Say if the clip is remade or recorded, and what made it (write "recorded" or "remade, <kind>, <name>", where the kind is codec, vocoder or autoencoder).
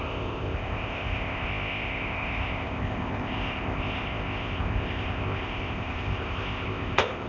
remade, codec, ZipCodec